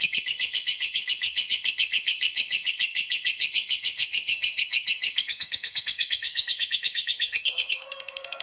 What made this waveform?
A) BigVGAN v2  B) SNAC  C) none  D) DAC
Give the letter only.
B